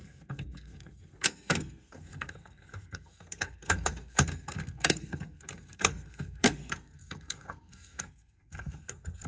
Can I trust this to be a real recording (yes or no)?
no